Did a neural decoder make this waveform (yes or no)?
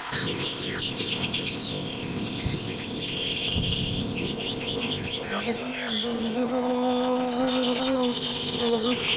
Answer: yes